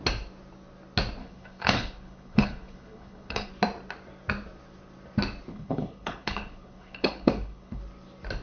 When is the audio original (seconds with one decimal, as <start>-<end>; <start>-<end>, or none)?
0.0-1.2; 3.5-5.5; 7.8-8.4